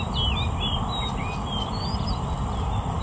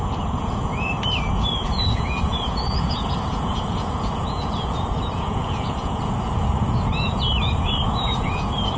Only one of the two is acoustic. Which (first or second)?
first